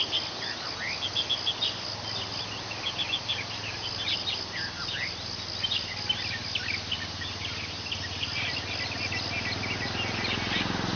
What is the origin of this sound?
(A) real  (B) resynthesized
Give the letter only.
A